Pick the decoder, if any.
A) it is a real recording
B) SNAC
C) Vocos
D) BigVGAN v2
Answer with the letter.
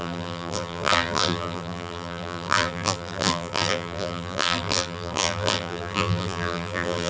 D